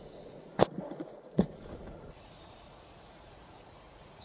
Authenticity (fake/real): fake